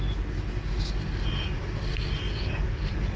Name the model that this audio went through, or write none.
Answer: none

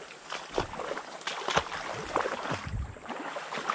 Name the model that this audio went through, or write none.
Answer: none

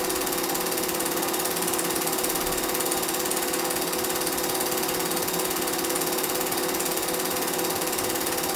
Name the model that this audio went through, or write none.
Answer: none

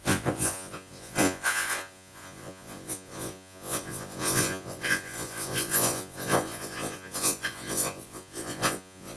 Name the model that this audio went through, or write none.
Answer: vocoder, Vocos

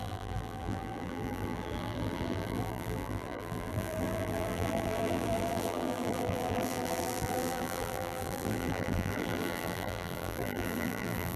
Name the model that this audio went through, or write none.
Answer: vocoder, BigVGAN v2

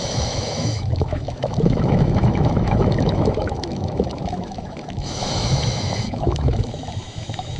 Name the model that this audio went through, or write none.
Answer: autoencoder, DAC-VAE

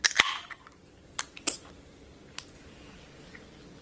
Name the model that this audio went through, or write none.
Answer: none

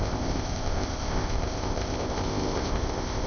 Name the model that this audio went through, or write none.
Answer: codec, ZipCodec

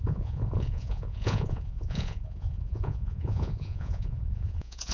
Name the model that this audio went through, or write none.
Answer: vocoder, Vocos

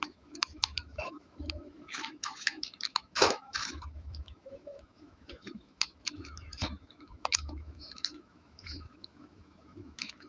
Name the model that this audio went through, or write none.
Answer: autoencoder, DAC-VAE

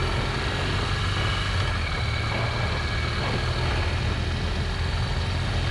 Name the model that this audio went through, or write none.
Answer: none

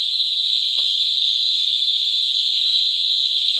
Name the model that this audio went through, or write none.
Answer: codec, SNAC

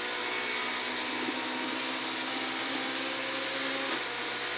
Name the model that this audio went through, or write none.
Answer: none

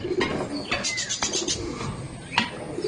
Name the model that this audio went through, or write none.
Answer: none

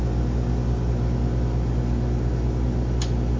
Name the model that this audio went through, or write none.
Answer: none